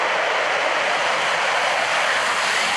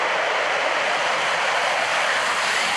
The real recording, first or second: first